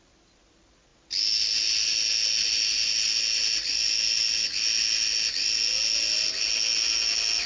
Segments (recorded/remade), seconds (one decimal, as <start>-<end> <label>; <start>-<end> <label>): 0.0-7.5 recorded

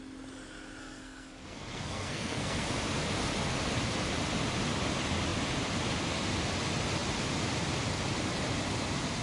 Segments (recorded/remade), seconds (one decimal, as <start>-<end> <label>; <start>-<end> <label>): 0.0-0.8 recorded; 0.8-2.7 remade; 2.7-9.2 recorded

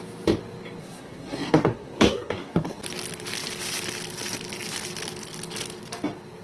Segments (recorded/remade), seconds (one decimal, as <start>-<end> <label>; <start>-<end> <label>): 0.0-0.8 recorded; 0.8-2.8 remade; 2.8-6.4 recorded

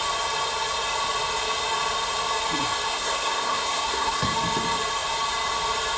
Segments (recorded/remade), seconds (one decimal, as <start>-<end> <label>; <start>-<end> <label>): 0.0-2.9 recorded; 2.9-4.3 remade; 4.3-6.0 recorded

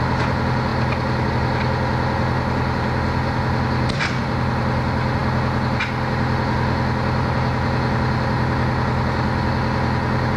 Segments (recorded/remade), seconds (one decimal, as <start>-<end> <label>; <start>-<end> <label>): 0.0-10.4 recorded